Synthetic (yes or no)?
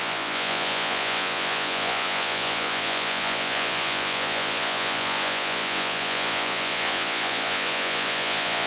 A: yes